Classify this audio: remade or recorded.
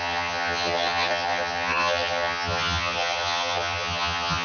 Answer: remade